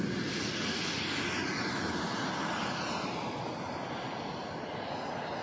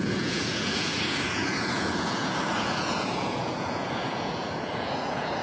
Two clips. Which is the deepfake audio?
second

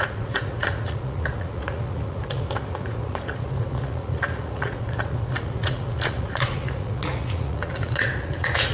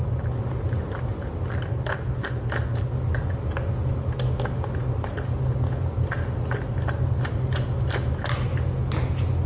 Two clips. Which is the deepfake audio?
first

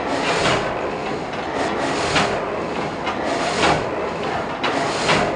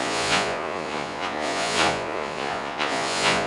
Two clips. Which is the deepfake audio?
second